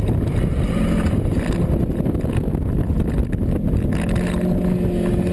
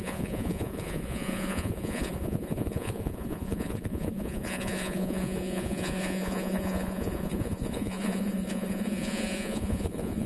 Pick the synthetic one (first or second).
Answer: second